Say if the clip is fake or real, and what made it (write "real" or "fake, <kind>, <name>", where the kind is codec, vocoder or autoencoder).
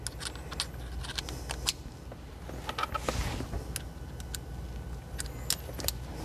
real